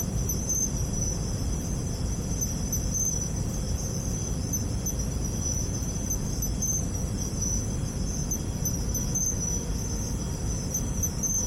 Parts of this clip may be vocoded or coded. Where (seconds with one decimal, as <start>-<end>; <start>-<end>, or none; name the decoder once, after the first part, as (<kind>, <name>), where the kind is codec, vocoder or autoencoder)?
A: none